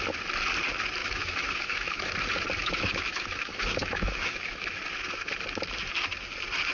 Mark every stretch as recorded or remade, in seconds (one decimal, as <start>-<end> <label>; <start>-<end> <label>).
0.0-1.0 recorded; 1.0-2.1 remade; 2.1-2.6 recorded; 2.6-4.8 remade; 4.8-6.7 recorded

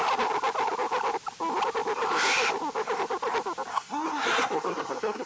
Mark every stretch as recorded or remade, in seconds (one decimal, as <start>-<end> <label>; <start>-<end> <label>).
0.0-3.7 recorded; 3.7-5.3 remade